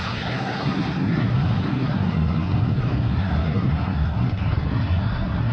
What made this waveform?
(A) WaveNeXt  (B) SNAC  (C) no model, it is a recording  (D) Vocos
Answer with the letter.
B